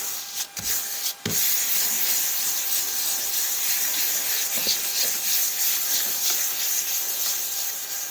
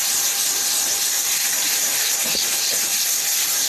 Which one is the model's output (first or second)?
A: second